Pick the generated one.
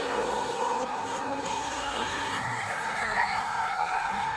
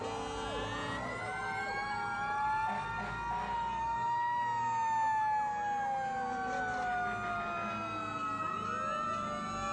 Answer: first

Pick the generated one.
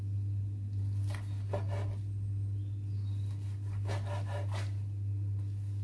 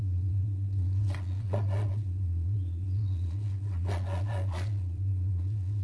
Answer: second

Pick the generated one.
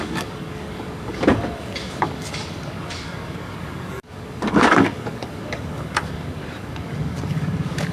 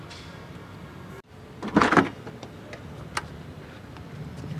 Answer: first